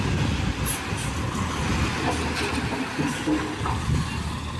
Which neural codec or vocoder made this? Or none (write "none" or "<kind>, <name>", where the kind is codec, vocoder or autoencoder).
none